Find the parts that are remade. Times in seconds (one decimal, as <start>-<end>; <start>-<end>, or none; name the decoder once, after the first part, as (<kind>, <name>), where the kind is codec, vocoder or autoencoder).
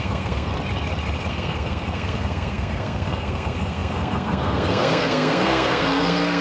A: 0.0-0.5 (codec, SNAC); 1.3-6.4